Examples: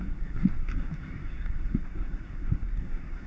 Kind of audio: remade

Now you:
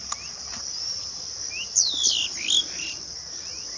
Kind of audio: remade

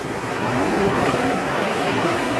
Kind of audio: remade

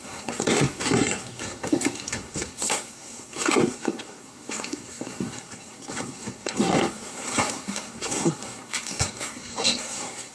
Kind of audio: remade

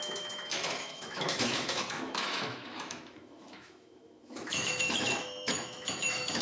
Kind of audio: remade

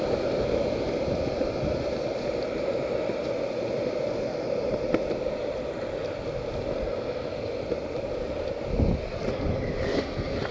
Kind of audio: recorded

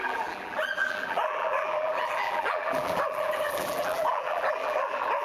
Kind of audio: remade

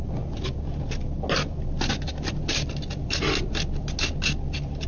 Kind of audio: recorded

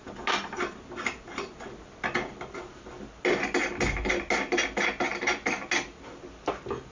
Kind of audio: recorded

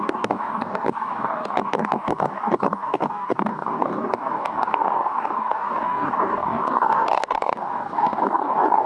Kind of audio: remade